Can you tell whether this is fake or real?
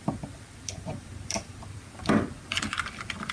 fake